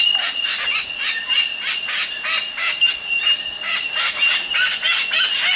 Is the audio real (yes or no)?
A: yes